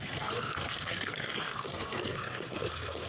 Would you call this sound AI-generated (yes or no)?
yes